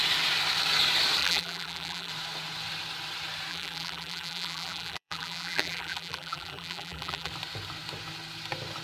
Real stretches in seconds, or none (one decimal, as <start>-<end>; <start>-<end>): 0.0-1.2; 2.1-3.5; 7.3-8.8